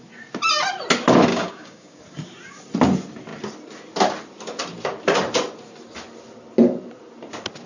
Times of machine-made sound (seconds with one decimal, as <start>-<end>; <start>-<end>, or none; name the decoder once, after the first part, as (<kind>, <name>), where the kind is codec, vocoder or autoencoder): 1.3-2.0 (codec, DAC)